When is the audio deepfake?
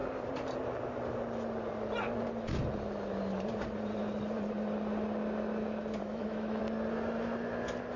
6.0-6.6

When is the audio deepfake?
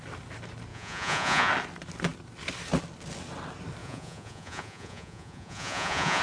0.7-1.5; 3.8-6.2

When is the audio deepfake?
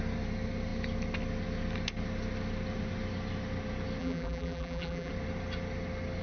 4.0-5.1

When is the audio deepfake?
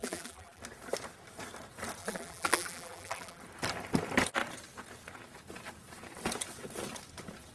0.0-0.6; 2.0-3.4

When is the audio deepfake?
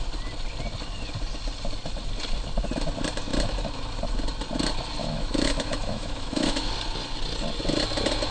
5.0-6.7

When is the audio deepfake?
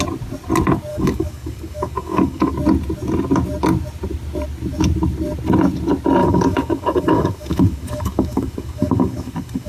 0.9-2.5; 6.2-9.7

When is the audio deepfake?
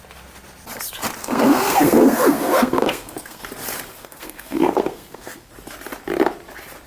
1.2-3.4; 3.9-5.5